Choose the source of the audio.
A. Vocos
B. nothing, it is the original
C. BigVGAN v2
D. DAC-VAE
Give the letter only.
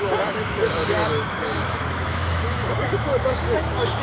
D